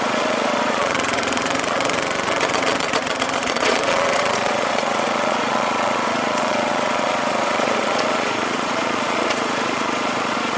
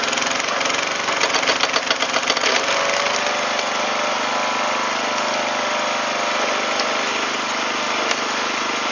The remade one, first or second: first